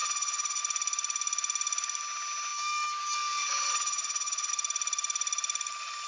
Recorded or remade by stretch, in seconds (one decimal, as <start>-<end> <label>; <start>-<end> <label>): 0.0-0.6 remade; 0.6-3.4 recorded; 3.4-4.5 remade; 4.5-6.1 recorded